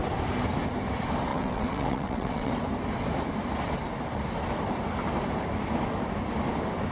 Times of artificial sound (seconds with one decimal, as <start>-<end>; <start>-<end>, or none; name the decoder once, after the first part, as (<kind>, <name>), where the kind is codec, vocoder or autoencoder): 1.3-2.5 (vocoder, WaveNeXt)